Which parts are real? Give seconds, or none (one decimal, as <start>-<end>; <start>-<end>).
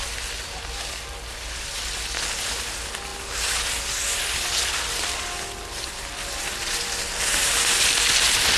0.0-8.6